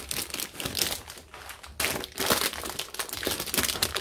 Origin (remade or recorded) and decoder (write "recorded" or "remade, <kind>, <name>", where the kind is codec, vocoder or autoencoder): recorded